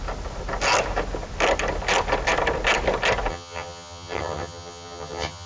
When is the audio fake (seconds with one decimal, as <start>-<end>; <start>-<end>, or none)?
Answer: 3.3-5.5